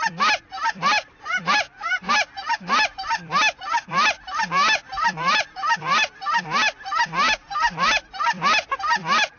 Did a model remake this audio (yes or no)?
yes